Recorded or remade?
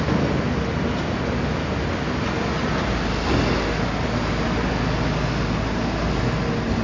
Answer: recorded